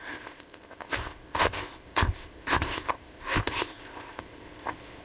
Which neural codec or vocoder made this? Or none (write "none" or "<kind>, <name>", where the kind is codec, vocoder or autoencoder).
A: codec, ZipCodec